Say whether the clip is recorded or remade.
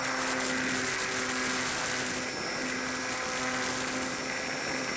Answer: recorded